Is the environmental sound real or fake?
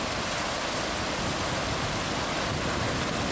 real